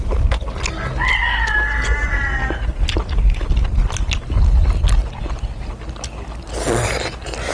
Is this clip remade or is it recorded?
recorded